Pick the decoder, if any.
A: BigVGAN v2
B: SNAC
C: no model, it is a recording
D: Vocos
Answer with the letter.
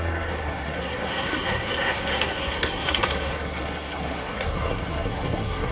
B